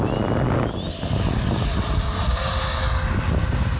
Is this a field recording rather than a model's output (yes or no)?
yes